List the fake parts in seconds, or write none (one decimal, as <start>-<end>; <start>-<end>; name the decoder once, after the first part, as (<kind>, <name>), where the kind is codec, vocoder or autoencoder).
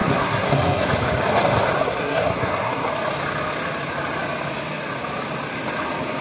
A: 0.0-0.9 (codec, SNAC); 1.8-2.9